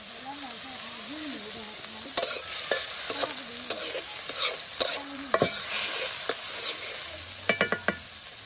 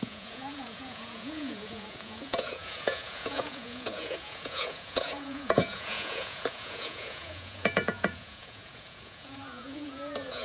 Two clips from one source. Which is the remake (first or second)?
second